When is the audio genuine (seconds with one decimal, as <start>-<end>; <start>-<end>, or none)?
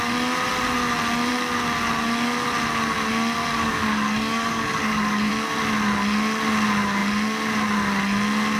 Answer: 0.0-3.4; 5.3-8.6